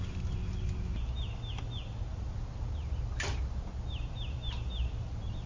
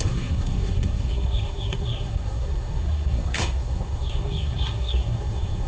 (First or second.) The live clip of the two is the first